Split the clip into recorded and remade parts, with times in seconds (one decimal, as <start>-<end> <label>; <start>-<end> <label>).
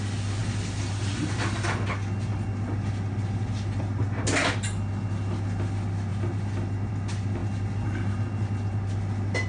0.0-9.5 recorded